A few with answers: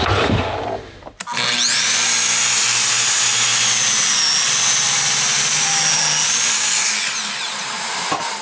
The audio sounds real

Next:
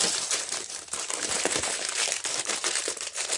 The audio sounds fake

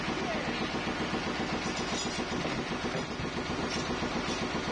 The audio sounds real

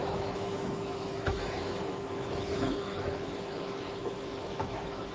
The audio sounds fake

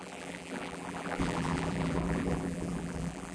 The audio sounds fake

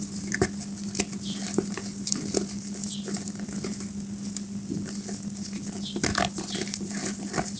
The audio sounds real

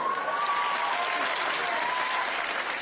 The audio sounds real